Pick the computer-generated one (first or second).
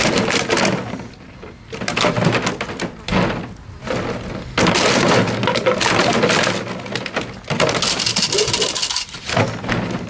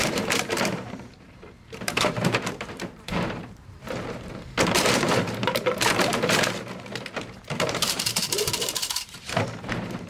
second